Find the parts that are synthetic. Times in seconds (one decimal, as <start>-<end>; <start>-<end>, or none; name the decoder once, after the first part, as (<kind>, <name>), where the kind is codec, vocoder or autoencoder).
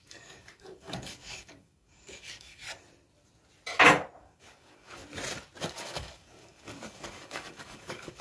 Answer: 0.0-2.6 (codec, DAC); 4.2-5.0; 5.6-8.2